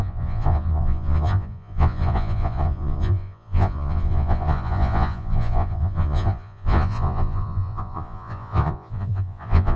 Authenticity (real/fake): fake